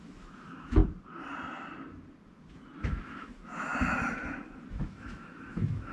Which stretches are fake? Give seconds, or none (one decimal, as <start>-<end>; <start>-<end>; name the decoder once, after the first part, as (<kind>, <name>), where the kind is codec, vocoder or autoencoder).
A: 0.0-0.8 (autoencoder, DAC-VAE); 2.8-3.7; 4.7-5.9